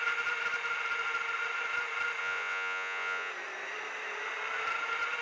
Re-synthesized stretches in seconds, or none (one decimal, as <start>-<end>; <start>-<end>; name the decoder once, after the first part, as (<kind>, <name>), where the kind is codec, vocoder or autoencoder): 2.2-3.3 (vocoder, Vocos)